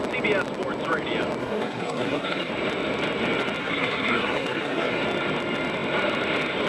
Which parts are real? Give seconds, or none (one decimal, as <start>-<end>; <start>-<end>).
0.0-1.4; 2.5-3.6; 5.0-6.7